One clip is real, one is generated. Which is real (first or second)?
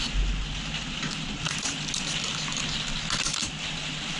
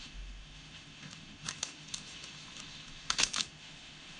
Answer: first